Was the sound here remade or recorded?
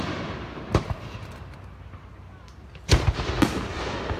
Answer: recorded